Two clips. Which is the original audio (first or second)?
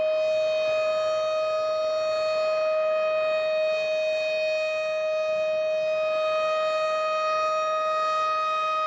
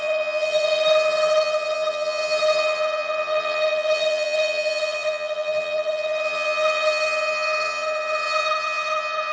first